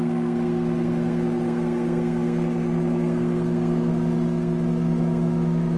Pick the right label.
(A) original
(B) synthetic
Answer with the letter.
B